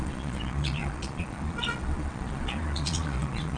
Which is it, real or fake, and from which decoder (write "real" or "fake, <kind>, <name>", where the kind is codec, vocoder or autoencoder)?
fake, vocoder, Vocos